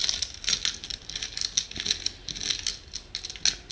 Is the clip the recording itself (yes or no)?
yes